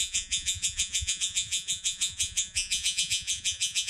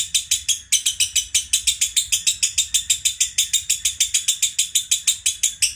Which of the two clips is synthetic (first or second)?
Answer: first